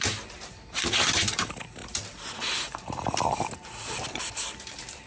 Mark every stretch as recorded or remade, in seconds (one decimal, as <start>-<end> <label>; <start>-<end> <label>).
0.0-5.1 recorded